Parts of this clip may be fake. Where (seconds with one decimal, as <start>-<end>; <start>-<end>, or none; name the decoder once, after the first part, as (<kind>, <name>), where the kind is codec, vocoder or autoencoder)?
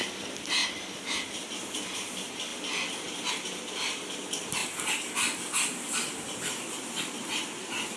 2.5-3.3 (vocoder, BigVGAN v2); 4.6-5.1